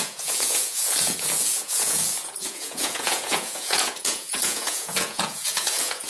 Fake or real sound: fake